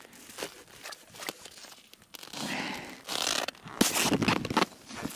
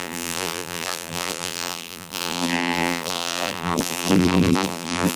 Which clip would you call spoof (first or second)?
second